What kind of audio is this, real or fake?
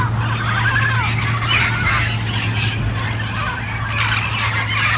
real